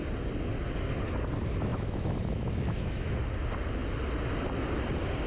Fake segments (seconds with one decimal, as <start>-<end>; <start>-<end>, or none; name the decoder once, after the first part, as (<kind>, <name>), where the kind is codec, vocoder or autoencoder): 1.7-3.1 (autoencoder, DAC-VAE)